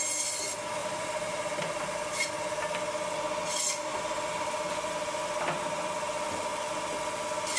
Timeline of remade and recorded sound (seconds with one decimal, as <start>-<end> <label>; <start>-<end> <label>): 0.0-0.8 recorded; 0.8-2.3 remade; 2.3-3.9 recorded; 3.9-5.2 remade; 5.2-7.6 recorded